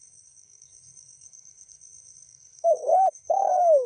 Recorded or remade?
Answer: remade